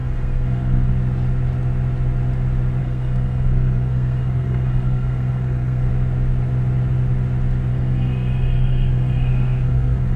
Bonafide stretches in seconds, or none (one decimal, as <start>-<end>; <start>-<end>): 0.9-2.8; 5.9-7.7